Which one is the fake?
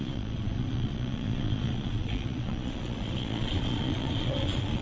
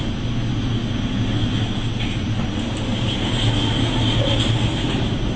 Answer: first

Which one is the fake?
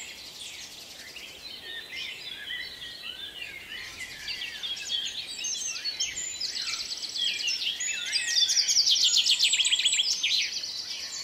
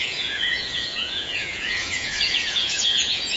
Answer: second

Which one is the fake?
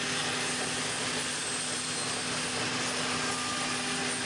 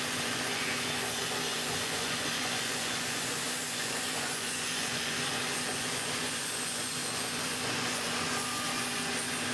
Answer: second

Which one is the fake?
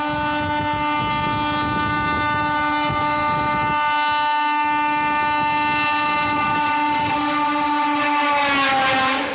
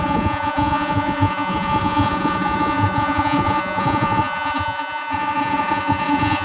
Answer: second